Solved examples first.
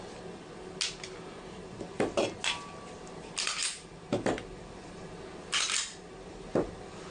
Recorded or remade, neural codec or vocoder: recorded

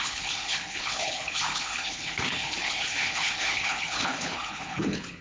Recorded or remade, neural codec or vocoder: remade, codec, HILCodec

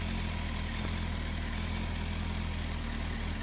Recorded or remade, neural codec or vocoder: recorded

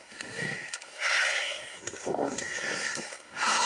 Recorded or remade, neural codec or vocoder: remade, codec, SNAC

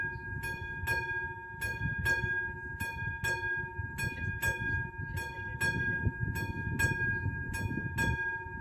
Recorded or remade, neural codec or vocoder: recorded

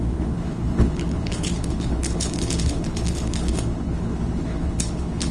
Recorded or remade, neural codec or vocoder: remade, codec, HILCodec